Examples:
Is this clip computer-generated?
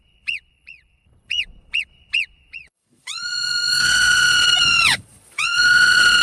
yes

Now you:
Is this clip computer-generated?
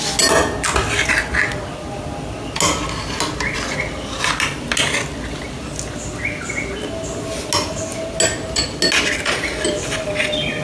no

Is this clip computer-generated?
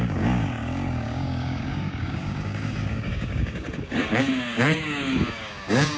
yes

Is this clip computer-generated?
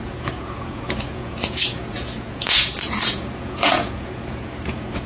yes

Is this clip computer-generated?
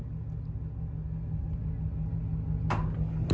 no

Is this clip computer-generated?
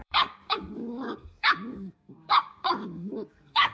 yes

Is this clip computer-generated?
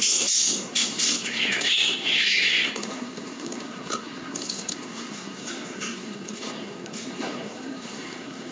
yes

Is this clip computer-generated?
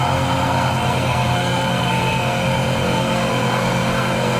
yes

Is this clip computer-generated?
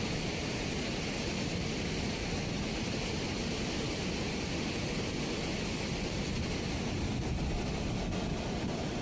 no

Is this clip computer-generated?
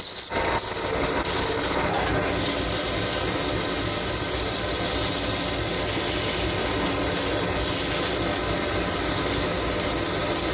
no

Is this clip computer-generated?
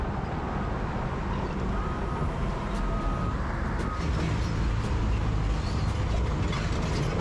no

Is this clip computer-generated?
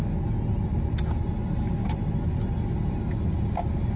no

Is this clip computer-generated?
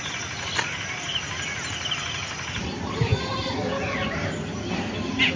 no